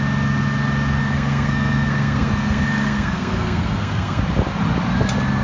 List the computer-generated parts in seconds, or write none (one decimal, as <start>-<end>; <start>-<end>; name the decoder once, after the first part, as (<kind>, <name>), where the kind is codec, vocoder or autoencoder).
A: 1.0-4.2 (codec, SNAC)